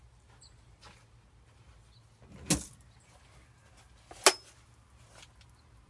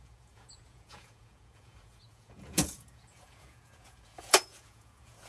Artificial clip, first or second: second